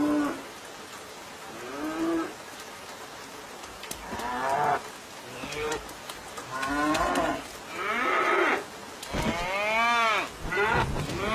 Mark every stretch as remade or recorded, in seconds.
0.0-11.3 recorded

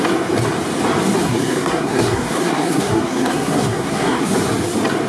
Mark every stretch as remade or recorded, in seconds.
0.0-1.2 recorded; 1.2-4.3 remade; 4.3-5.1 recorded